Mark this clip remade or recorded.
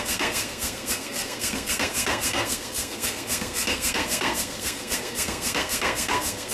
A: remade